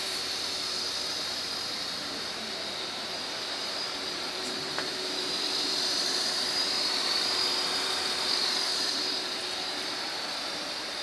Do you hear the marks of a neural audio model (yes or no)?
yes